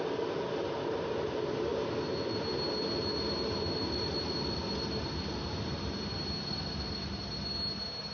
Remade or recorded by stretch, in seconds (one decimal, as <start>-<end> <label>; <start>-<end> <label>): 0.0-8.1 recorded

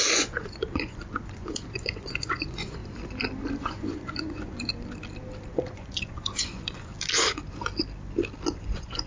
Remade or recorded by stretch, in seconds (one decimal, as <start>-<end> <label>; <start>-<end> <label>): 0.0-2.8 remade; 2.8-3.6 recorded; 3.6-4.7 remade; 4.7-5.5 recorded; 5.5-6.9 remade; 6.9-8.5 recorded; 8.5-9.1 remade

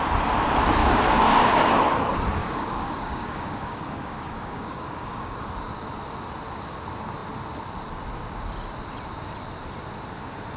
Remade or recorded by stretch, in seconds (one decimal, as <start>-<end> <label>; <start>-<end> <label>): 0.0-0.8 recorded; 0.8-1.8 remade; 1.8-2.4 recorded; 2.4-5.5 remade; 5.5-10.6 recorded

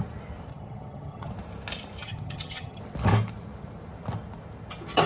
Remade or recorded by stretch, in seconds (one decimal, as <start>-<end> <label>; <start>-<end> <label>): 0.0-0.5 recorded; 0.5-1.3 remade; 1.3-2.0 recorded; 2.0-2.8 remade; 2.8-5.1 recorded

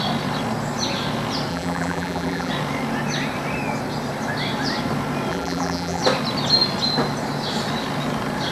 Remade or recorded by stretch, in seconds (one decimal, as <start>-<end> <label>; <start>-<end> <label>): 0.0-1.5 recorded; 1.5-2.5 remade; 2.5-5.3 recorded; 5.3-6.0 remade; 6.0-8.5 recorded

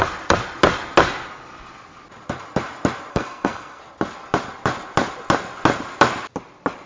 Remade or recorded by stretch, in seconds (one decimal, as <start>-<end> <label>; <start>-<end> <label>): 0.0-3.1 recorded; 3.1-3.8 remade; 3.8-6.9 recorded